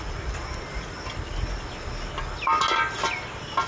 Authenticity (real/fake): real